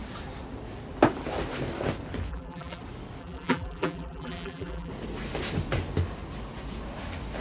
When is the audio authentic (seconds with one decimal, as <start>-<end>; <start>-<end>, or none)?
0.0-2.3; 2.8-3.2; 4.9-7.4